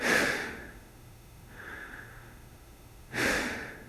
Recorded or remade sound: remade